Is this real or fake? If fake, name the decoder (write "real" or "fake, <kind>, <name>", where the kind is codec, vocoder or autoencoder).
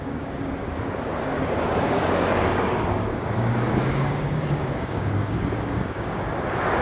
fake, codec, DAC